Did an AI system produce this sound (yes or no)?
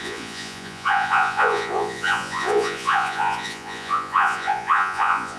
yes